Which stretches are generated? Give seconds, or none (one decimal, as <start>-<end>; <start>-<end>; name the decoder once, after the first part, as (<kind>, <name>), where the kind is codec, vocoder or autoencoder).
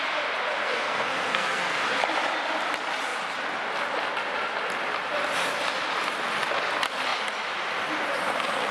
0.6-1.8 (codec, SNAC)